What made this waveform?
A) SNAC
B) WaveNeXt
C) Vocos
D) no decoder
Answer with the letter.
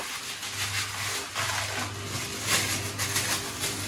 D